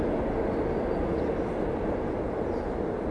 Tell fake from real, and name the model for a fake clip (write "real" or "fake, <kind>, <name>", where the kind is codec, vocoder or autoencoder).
real